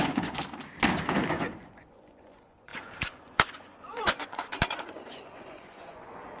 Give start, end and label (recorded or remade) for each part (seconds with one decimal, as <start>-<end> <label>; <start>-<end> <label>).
0.0-0.4 remade; 0.4-1.3 recorded; 1.3-6.4 remade